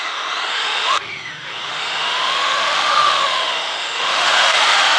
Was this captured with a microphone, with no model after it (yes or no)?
no